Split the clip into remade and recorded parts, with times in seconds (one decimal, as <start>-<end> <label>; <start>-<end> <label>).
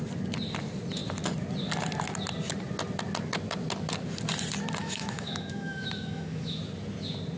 0.0-4.8 recorded; 4.8-6.6 remade; 6.6-7.4 recorded